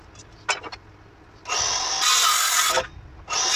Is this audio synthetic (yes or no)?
no